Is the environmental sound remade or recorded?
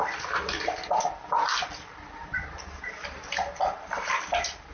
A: recorded